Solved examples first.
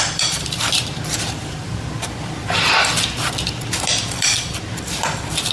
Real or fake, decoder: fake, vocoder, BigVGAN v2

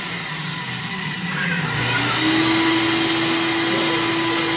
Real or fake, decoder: real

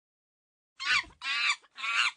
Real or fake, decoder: real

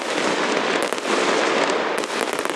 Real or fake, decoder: real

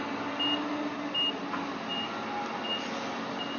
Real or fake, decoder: real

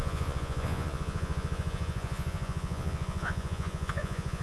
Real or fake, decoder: fake, vocoder, Vocos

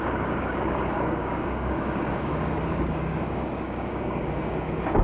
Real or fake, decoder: fake, codec, DAC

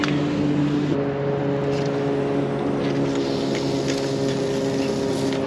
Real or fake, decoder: real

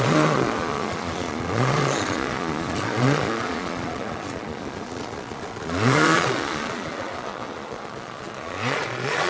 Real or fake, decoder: fake, vocoder, Vocos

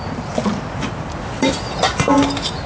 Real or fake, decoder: real